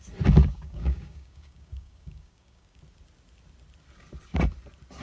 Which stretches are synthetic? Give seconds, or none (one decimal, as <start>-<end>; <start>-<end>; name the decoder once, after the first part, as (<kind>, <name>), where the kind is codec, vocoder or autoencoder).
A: 0.4-2.8 (codec, DAC)